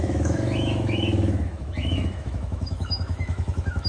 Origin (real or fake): fake